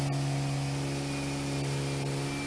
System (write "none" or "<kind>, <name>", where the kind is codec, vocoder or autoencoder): none